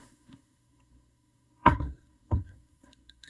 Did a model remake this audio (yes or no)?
yes